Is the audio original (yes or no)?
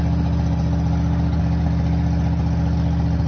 yes